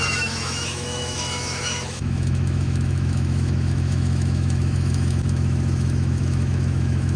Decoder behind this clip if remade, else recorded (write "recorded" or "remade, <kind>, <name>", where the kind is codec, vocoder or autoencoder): remade, autoencoder, DAC-VAE